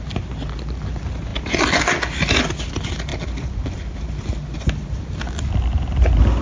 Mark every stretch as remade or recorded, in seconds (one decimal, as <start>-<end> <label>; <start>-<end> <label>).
0.0-6.4 recorded